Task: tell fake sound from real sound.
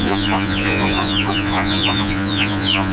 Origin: fake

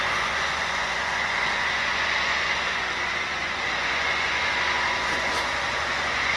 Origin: fake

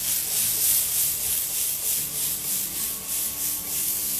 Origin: real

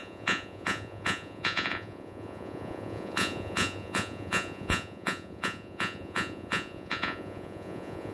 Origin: fake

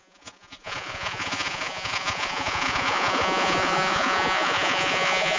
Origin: fake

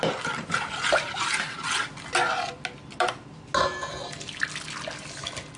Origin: real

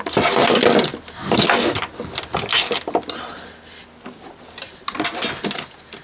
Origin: real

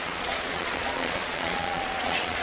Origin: fake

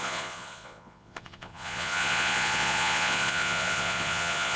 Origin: fake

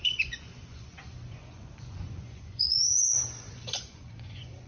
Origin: fake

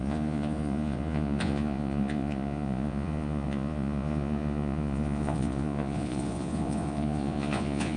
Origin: fake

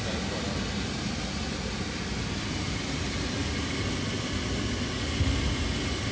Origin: real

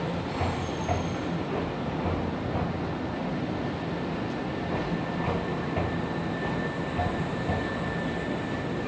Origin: real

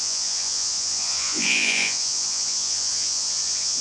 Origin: fake